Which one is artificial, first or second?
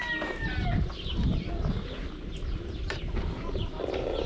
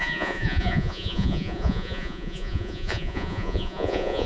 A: second